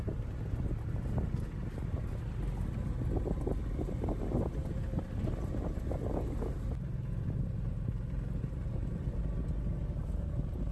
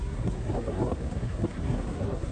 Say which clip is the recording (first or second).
first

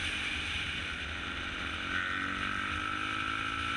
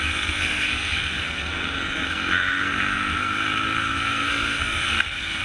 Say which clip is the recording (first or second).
first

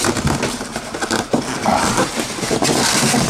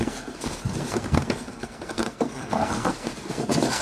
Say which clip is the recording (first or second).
first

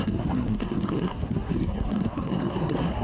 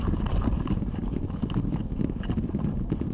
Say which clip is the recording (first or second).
second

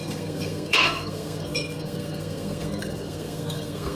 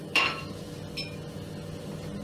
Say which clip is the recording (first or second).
second